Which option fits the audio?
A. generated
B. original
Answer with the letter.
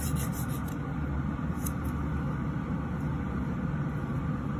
B